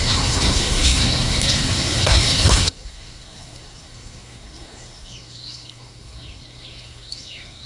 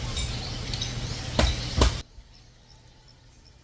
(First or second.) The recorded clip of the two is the second